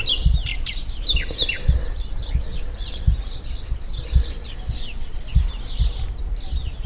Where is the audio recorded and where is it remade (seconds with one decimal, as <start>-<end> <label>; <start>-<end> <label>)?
0.0-6.9 recorded